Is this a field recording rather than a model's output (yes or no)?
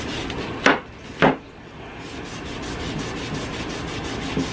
yes